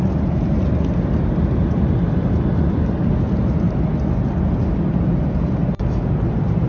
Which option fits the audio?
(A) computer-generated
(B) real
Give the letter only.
B